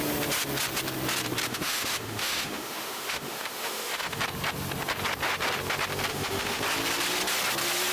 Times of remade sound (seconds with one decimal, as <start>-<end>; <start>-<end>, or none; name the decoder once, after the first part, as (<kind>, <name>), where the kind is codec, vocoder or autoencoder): 1.5-4.2 (autoencoder, DAC-VAE); 6.1-6.6